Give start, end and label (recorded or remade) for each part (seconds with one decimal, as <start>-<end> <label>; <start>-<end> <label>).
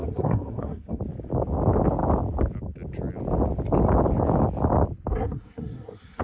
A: 0.0-1.0 remade; 1.0-5.1 recorded; 5.1-6.2 remade